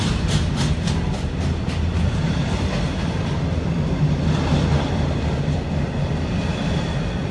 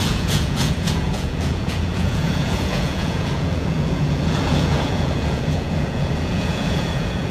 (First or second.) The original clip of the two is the first